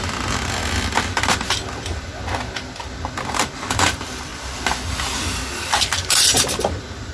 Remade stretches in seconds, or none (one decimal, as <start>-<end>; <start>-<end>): 0.0-2.1; 3.1-4.3; 5.5-7.1